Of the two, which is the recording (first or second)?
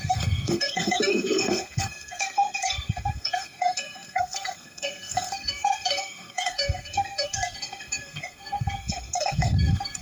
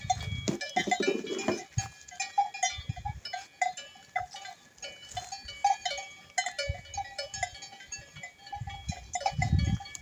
second